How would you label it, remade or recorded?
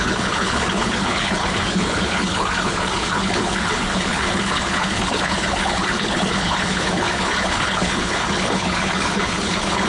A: remade